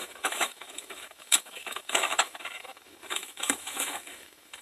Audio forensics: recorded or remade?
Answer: remade